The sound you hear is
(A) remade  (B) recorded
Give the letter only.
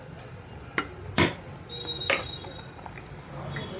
B